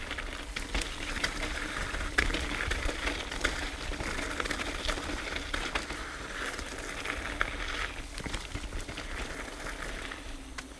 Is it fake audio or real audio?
real